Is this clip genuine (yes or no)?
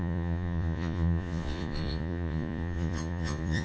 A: no